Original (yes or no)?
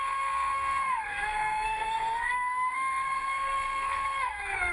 no